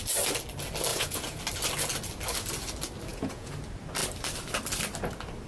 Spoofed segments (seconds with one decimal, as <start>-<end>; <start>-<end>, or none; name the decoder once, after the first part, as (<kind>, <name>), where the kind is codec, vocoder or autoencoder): 0.9-1.4 (vocoder, Vocos); 3.1-3.6